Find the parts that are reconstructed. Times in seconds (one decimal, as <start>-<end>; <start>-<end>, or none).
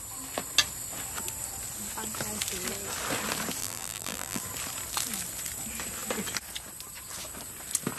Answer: 3.6-4.4